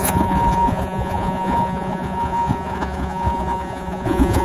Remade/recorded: remade